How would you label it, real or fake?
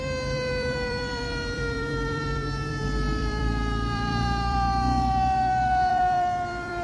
fake